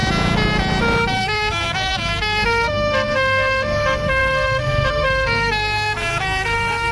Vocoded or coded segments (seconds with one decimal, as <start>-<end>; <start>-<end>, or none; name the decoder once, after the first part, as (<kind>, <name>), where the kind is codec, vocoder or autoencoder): 1.1-6.9 (codec, SNAC)

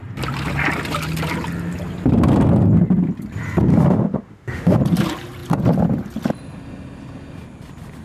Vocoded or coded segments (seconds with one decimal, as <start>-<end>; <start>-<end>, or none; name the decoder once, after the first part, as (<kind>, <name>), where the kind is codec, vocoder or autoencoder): 3.7-4.8 (autoencoder, DAC-VAE)